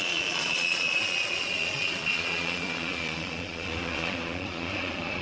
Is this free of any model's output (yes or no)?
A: no